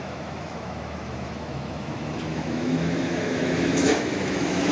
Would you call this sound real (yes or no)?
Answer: no